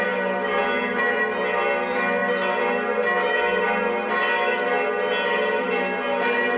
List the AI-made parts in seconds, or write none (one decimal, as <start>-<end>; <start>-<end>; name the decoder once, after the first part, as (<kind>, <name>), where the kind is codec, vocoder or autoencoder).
none